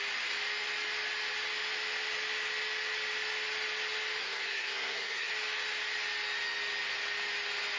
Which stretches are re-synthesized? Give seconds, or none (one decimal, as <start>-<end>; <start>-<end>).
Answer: 4.2-5.3